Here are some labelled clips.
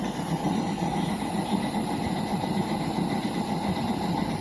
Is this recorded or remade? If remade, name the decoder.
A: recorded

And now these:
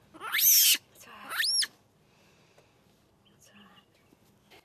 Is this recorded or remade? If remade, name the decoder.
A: recorded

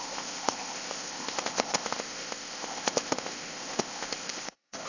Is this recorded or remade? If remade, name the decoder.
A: remade, codec, ZipCodec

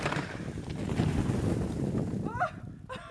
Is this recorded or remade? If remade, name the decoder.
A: recorded